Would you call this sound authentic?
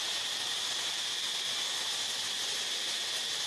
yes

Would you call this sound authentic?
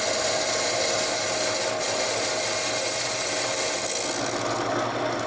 yes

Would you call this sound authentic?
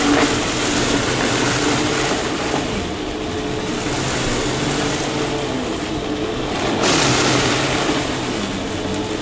yes